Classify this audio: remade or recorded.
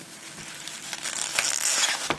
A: recorded